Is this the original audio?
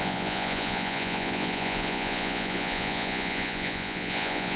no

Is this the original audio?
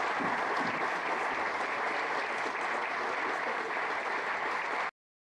yes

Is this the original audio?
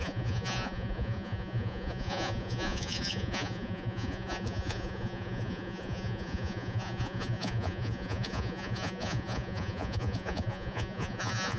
no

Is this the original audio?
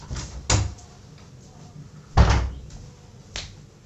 yes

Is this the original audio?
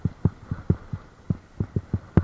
yes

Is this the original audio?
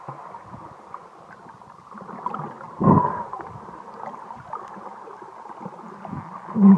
yes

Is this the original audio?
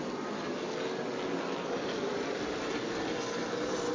yes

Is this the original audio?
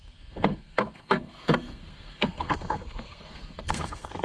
no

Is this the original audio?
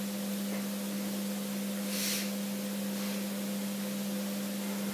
yes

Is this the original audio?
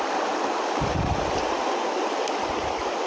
yes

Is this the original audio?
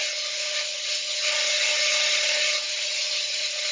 no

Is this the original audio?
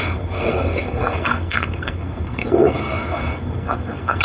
no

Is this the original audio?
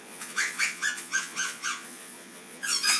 no